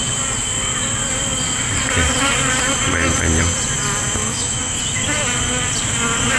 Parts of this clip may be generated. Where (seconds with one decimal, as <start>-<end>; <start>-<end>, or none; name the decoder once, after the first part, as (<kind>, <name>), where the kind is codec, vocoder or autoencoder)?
4.2-4.8 (autoencoder, DAC-VAE)